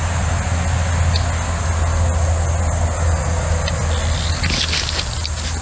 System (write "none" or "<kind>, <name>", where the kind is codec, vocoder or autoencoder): none